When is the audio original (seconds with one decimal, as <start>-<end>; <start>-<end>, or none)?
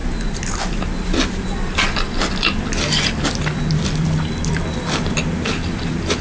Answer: 0.0-3.7